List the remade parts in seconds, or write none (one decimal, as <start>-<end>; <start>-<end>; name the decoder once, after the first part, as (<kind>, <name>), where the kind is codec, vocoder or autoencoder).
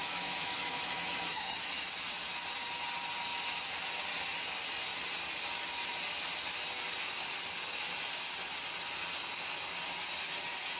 0.0-1.9 (autoencoder, DAC-VAE)